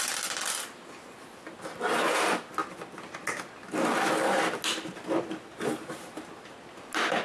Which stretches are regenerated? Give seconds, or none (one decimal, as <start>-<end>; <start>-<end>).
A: none